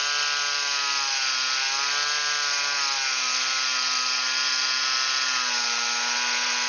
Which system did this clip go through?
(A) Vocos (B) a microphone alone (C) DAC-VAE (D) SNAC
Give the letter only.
B